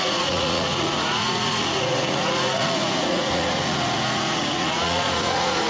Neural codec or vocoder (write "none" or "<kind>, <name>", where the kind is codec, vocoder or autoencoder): vocoder, Vocos